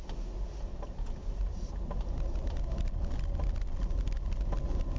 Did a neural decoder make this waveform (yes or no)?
no